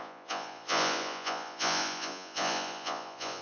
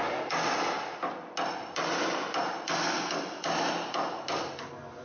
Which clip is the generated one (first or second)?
first